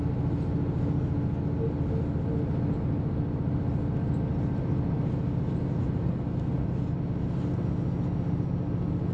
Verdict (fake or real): real